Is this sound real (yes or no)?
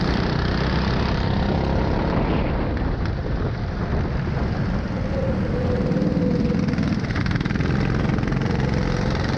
yes